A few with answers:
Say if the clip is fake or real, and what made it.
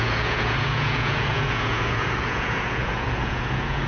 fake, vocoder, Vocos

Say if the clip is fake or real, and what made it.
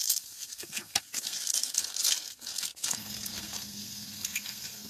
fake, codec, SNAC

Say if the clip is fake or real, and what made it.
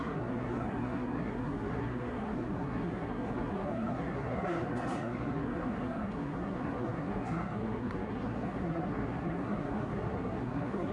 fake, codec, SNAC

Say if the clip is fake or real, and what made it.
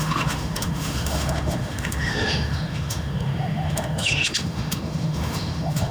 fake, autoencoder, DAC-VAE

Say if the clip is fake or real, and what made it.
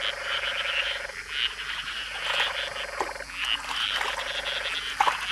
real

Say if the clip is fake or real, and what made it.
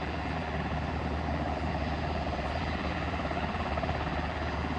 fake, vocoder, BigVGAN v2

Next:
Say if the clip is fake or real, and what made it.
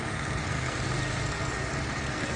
fake, codec, SNAC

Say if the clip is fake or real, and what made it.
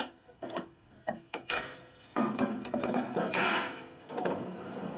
fake, codec, SNAC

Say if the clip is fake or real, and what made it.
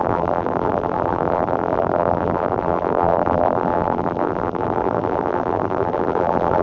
fake, vocoder, BigVGAN v2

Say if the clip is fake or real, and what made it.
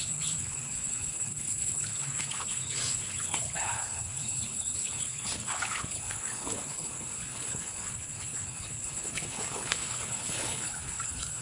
fake, codec, HILCodec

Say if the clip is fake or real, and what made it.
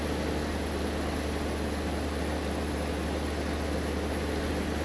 real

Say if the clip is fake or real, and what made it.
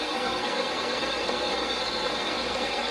fake, codec, SNAC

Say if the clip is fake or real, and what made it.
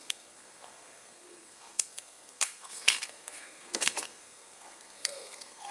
fake, codec, SNAC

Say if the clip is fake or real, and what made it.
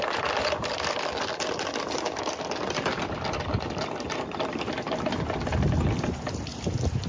real